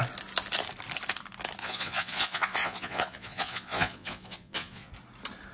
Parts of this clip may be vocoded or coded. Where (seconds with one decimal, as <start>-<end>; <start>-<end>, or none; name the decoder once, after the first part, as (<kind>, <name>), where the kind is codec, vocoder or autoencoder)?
1.6-4.9 (vocoder, Vocos)